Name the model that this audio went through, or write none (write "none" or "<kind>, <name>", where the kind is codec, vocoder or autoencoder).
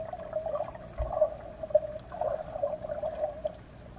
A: none